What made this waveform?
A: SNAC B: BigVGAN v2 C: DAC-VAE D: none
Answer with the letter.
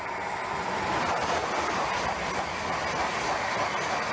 D